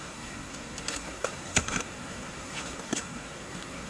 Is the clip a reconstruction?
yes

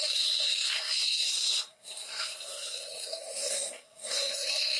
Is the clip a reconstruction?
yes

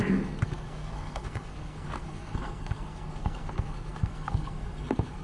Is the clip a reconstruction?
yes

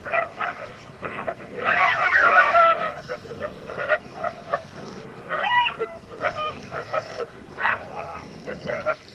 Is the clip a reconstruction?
yes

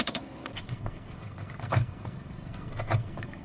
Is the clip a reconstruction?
yes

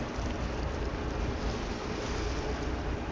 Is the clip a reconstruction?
no